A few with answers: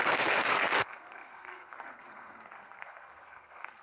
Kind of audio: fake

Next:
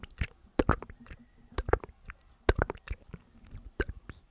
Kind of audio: real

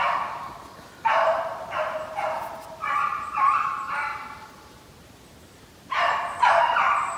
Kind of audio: real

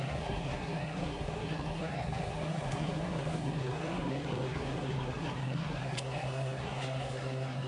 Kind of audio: fake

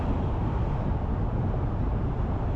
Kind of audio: real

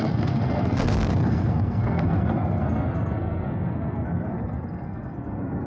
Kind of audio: fake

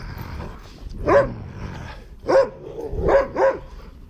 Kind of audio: real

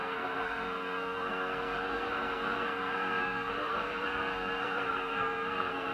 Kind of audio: fake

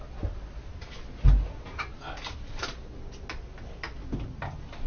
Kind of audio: real